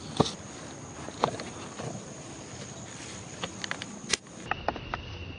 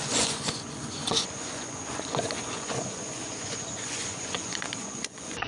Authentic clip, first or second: first